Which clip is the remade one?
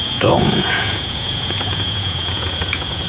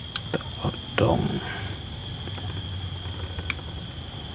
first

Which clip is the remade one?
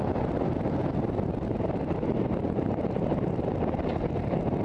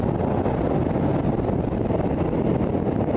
first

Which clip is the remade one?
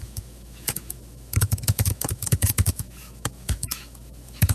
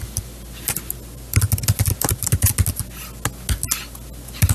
first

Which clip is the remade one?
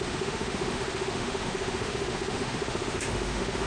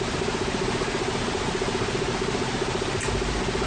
first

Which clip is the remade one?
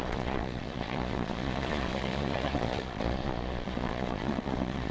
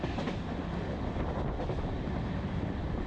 first